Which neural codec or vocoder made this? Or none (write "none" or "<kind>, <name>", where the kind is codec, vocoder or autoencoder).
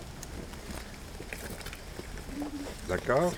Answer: none